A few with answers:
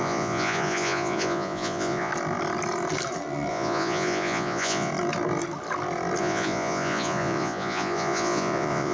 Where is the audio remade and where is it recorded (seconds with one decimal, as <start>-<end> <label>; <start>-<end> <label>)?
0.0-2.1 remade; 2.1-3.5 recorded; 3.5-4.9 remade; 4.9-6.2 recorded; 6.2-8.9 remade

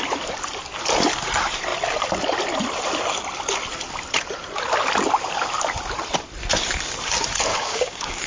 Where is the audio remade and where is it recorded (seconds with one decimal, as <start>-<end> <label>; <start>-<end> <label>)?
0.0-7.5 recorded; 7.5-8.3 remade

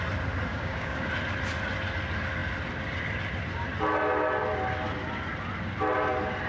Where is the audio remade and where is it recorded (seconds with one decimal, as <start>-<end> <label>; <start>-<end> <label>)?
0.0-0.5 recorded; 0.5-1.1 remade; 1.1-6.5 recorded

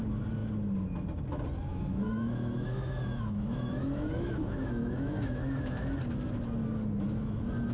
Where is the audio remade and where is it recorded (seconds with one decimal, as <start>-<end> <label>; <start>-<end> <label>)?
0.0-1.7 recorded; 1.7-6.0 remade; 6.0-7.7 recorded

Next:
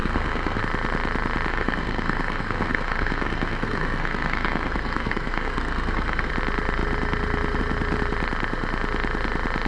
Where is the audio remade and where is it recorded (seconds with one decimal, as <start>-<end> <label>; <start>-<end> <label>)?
0.0-0.6 remade; 0.6-1.5 recorded; 1.5-6.3 remade; 6.3-9.7 recorded